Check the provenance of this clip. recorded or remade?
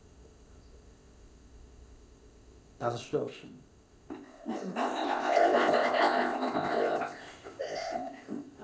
remade